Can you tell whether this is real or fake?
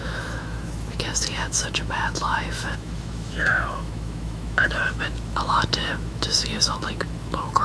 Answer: fake